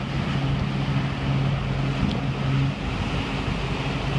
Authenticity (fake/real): real